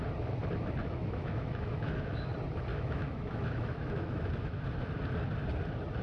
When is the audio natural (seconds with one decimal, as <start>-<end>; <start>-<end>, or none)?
0.0-0.8; 2.3-2.7; 4.6-6.0